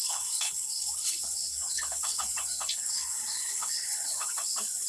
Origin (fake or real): fake